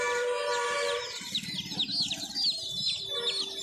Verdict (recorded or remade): recorded